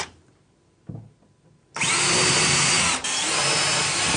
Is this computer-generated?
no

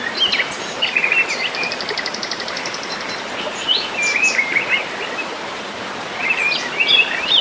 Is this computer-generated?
yes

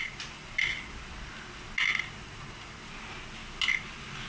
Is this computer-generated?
no